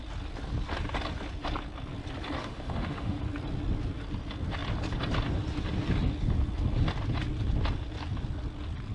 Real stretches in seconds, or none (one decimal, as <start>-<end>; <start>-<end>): 0.0-2.4; 3.2-8.9